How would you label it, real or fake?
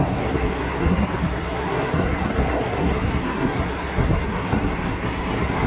fake